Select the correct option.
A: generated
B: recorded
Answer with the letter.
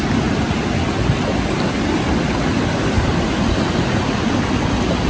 B